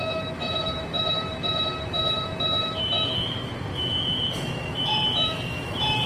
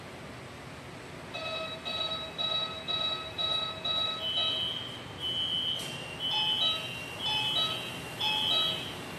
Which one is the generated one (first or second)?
first